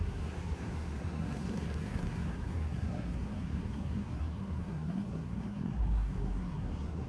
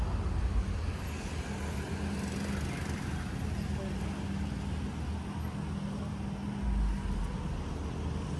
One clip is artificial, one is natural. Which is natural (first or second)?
second